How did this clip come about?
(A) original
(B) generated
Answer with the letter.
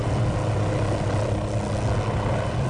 A